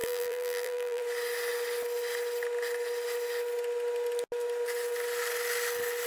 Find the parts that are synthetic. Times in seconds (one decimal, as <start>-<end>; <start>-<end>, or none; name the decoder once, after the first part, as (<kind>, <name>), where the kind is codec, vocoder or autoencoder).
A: 0.0-1.0 (vocoder, BigVGAN v2)